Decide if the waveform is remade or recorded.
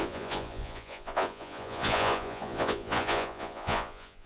remade